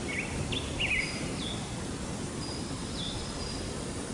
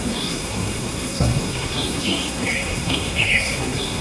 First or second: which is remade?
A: second